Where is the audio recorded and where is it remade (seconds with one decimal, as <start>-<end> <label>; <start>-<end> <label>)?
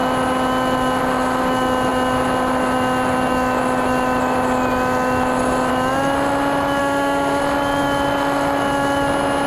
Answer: 0.0-6.8 recorded; 6.8-7.4 remade; 7.4-9.5 recorded